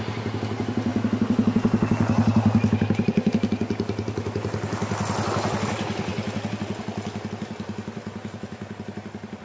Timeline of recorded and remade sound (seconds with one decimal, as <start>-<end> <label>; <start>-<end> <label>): 0.0-9.4 recorded